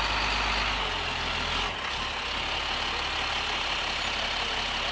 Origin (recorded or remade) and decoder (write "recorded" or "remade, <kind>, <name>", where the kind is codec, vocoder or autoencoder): recorded